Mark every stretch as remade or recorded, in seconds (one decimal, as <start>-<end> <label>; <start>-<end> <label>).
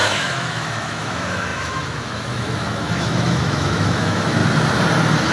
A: 0.0-4.4 remade; 4.4-5.3 recorded